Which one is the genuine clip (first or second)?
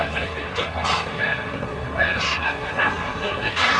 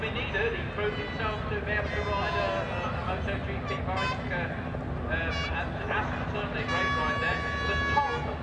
second